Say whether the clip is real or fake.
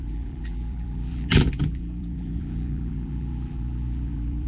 fake